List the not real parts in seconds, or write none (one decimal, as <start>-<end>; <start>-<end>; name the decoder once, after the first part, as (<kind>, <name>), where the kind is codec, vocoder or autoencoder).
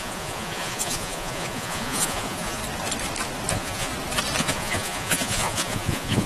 0.0-2.6 (vocoder, Vocos); 3.5-3.9; 4.4-6.3